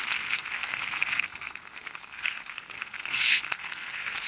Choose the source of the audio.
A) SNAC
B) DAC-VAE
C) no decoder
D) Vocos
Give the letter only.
A